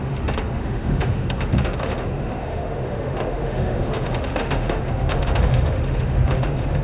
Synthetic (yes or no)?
yes